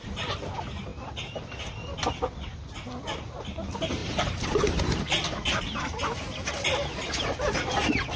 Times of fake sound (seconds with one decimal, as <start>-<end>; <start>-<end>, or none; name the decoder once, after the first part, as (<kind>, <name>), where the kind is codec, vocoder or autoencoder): 4.0-6.5 (vocoder, BigVGAN v2)

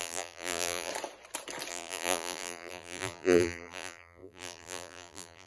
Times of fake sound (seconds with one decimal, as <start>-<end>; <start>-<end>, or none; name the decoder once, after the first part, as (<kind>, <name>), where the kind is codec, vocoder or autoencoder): 0.0-0.9 (vocoder, BigVGAN v2); 1.7-5.5